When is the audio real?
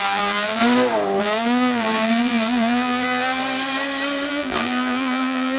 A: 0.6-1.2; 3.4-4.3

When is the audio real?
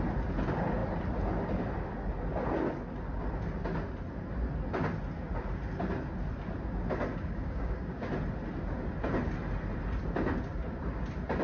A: 0.0-7.1; 8.1-11.4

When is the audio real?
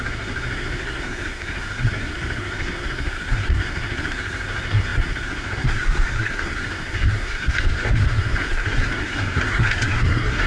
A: none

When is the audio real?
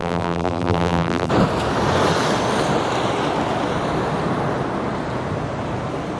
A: 1.3-6.2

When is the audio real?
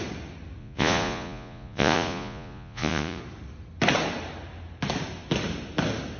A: 0.0-0.6; 3.2-6.2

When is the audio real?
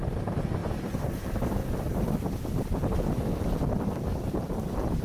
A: 0.0-5.0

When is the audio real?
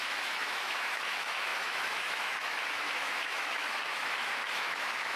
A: none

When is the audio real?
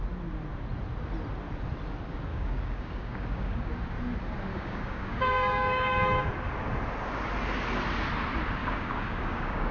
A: 0.0-2.3; 3.7-4.5; 6.3-8.6